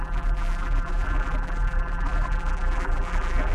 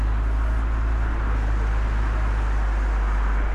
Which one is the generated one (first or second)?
first